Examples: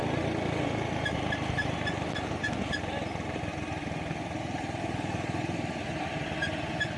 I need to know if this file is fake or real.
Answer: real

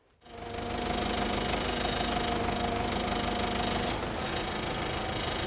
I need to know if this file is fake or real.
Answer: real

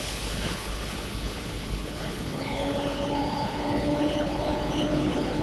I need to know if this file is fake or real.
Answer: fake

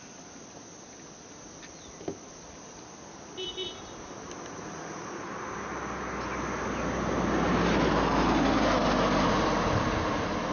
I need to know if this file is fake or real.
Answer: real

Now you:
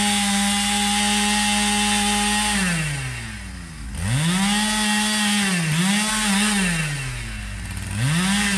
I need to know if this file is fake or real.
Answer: real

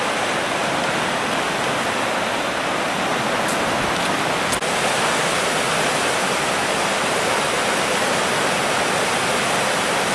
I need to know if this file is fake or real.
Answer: real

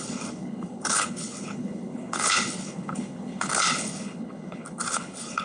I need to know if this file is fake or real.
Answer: fake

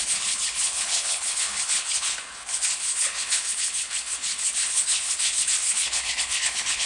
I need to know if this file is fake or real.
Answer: fake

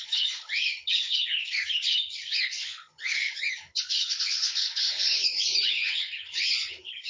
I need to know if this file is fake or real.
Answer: fake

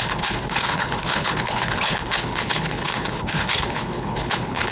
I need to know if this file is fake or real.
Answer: fake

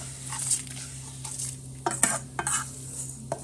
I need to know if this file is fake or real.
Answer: real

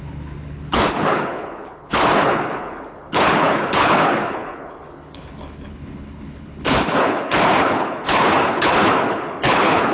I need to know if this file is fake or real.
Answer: fake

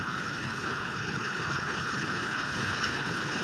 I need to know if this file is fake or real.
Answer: fake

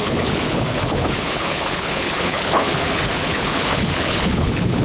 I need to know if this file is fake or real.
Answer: fake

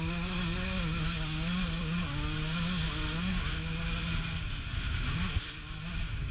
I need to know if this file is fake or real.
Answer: real